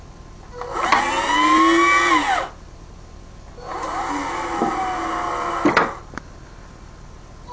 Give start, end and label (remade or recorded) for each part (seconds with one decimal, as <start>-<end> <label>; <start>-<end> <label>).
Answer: 0.0-7.5 recorded